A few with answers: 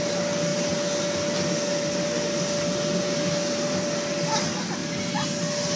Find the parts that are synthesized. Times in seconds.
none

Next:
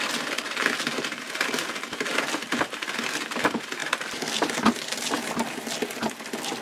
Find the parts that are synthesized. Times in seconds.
3.8-5.5 (vocoder, BigVGAN v2)

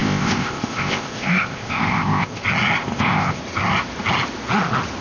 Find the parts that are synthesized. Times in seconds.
0.0-2.4 (codec, ZipCodec); 2.8-3.4

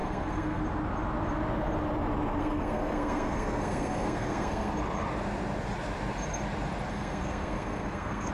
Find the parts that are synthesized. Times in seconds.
0.0-0.6 (codec, SNAC); 2.4-4.7; 6.9-8.3

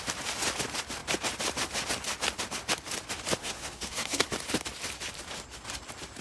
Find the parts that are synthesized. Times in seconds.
3.4-4.3 (codec, SNAC)

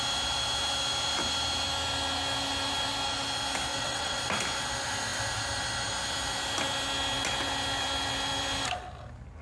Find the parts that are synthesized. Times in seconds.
3.7-4.2 (vocoder, WaveNeXt)

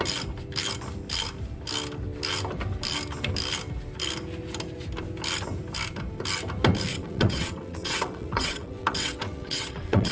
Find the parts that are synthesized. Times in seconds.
6.9-10.1 (vocoder, WaveNeXt)

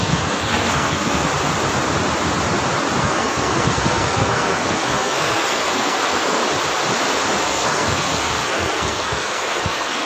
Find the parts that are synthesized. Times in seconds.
0.0-1.3 (codec, SNAC); 3.0-6.4; 7.4-10.1